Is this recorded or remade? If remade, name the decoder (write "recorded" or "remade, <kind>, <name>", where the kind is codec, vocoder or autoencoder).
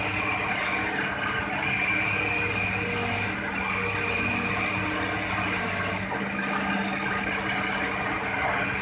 recorded